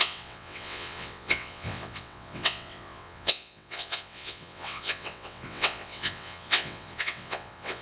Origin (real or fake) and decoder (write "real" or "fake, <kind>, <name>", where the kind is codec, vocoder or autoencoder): fake, vocoder, WaveNeXt